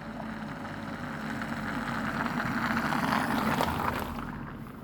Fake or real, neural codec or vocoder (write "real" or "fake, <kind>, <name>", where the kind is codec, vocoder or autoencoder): real